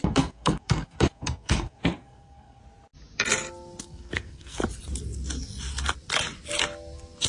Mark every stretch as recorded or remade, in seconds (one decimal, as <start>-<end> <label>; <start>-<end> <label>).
0.0-2.6 remade; 2.6-3.8 recorded; 3.8-4.6 remade; 4.6-7.3 recorded